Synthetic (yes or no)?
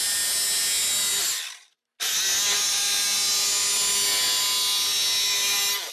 no